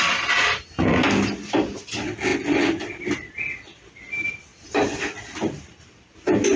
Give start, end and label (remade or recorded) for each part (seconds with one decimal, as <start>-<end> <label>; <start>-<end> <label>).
0.0-4.5 recorded; 4.5-6.6 remade